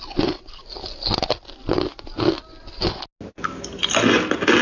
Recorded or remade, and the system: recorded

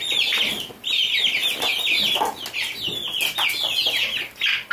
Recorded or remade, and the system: recorded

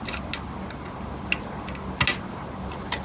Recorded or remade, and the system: recorded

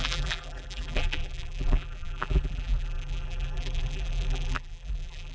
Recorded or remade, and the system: remade, vocoder, BigVGAN v2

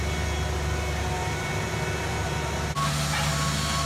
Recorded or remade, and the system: recorded